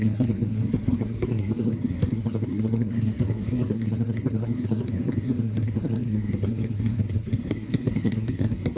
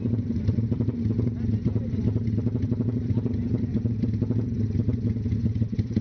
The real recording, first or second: second